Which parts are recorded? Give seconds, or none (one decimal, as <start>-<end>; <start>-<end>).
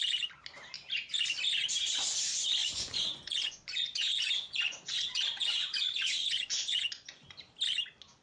0.0-2.6; 7.4-8.2